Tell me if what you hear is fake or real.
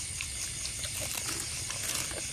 real